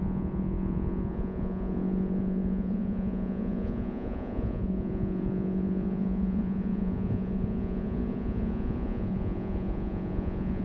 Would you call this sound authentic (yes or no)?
no